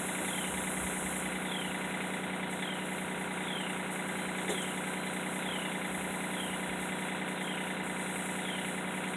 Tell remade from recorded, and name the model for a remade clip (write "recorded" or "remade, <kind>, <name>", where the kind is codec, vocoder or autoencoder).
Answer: recorded